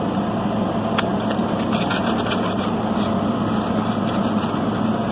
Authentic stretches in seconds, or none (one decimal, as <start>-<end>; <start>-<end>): 0.0-1.1; 2.0-5.1